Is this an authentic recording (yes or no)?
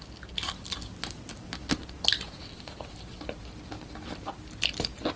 yes